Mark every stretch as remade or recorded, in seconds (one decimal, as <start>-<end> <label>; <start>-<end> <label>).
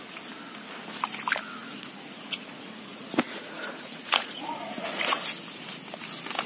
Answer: 0.0-1.6 recorded; 1.6-5.2 remade; 5.2-6.5 recorded